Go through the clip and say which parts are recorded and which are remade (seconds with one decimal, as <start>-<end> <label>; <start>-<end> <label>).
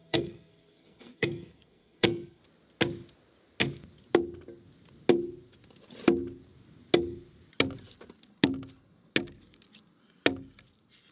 0.0-2.4 remade; 2.4-11.1 recorded